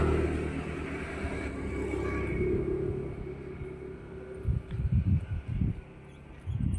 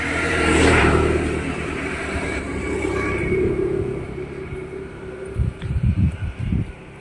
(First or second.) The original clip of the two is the first